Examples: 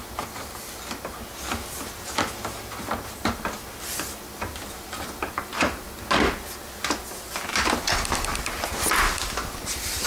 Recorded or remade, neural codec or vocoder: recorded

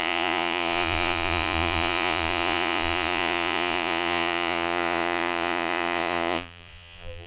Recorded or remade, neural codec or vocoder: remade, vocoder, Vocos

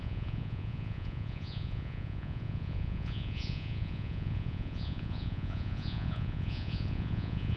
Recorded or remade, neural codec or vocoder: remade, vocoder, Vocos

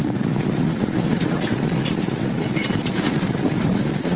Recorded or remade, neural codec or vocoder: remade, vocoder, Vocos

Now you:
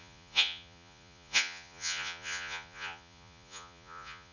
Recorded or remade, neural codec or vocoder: remade, vocoder, Vocos